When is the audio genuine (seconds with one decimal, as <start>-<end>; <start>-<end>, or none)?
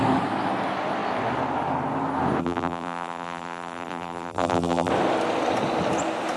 0.0-2.4; 4.9-6.4